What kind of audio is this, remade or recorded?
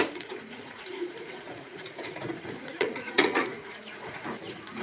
remade